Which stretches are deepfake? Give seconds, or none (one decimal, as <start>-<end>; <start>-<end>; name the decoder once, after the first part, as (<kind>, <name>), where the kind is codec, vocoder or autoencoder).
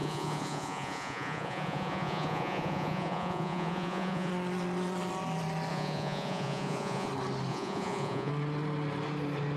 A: 0.0-4.3 (vocoder, Vocos); 5.7-7.1; 7.5-8.3